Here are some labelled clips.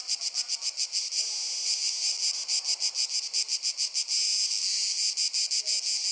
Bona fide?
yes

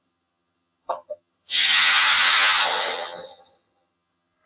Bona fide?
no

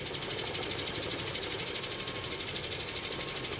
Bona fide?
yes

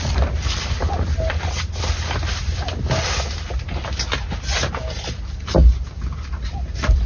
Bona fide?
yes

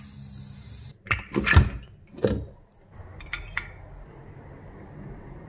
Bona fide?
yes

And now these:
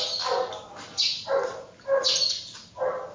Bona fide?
yes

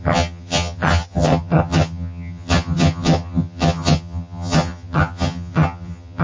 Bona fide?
no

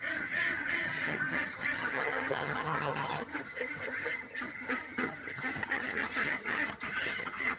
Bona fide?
no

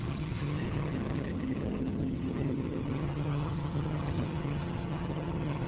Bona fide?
no